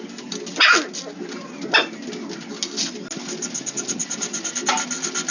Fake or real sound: real